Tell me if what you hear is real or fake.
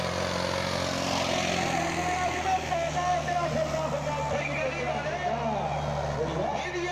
real